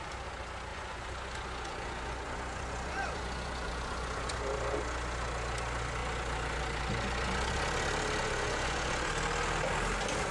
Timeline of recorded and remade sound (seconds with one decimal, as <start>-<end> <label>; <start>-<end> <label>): 0.0-0.7 recorded; 0.7-4.4 remade; 4.4-8.2 recorded; 8.2-9.1 remade; 9.1-10.3 recorded